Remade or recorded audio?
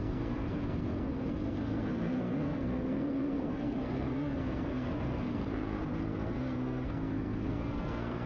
remade